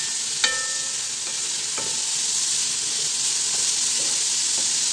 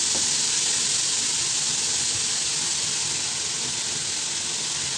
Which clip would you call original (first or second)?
first